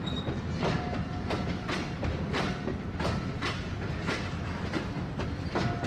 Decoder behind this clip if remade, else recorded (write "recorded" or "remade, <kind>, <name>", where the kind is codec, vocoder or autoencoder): recorded